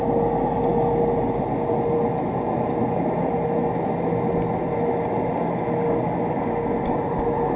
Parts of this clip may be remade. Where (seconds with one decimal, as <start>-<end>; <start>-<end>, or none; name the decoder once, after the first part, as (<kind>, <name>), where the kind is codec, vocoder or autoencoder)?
none